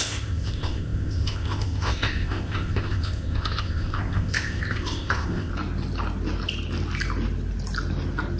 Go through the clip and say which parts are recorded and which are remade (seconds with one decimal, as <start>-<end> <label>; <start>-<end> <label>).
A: 0.0-5.5 remade; 5.5-8.4 recorded